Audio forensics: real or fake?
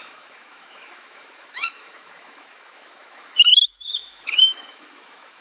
fake